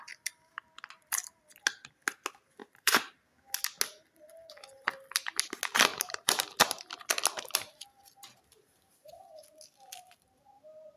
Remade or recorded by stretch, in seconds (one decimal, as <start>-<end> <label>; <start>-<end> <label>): 0.0-2.6 recorded; 2.6-3.1 remade; 3.1-5.9 recorded; 5.9-6.9 remade; 6.9-11.0 recorded